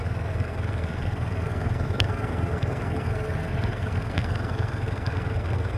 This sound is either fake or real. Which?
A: fake